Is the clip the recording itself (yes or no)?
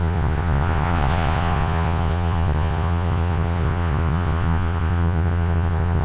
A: no